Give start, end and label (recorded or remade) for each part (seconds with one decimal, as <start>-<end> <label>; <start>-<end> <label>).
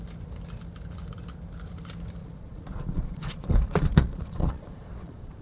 0.0-2.2 recorded; 2.2-5.4 remade